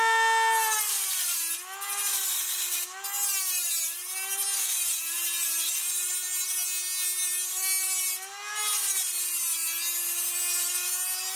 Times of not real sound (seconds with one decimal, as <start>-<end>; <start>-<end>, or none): none